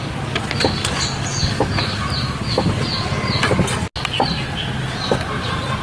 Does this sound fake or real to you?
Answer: real